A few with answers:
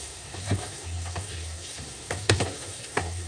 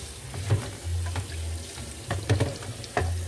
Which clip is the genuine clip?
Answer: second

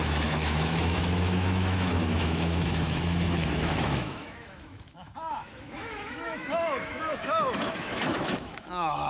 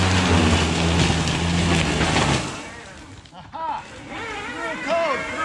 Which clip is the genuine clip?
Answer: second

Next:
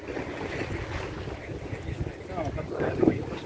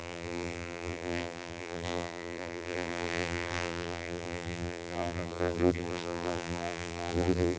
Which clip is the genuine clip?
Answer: first